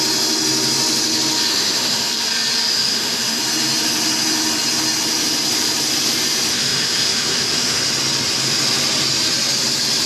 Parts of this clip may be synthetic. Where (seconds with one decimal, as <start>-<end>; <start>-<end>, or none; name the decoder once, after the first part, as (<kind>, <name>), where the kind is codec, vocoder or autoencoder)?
1.5-2.1 (autoencoder, DAC-VAE); 2.7-3.4; 6.5-7.8